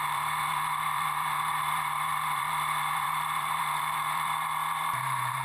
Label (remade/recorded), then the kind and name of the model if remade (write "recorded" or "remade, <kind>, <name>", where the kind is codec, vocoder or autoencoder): remade, vocoder, BigVGAN v2